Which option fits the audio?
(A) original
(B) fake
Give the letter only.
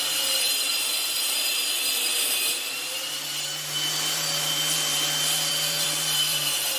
B